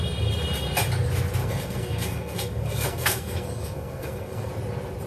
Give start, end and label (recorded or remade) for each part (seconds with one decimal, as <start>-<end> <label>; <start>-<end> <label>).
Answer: 0.0-1.4 recorded; 1.4-4.5 remade; 4.5-5.1 recorded